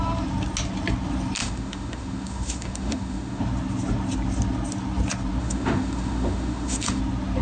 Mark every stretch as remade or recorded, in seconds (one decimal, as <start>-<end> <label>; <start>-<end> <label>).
0.0-1.4 recorded; 1.4-3.4 remade; 3.4-5.4 recorded; 5.4-7.0 remade; 7.0-7.4 recorded